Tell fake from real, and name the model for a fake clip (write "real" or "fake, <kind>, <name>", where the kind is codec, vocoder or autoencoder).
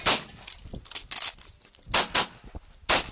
real